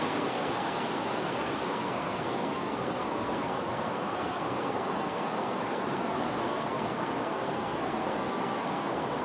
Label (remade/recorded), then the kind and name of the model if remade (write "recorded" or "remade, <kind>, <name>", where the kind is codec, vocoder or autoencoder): remade, codec, SNAC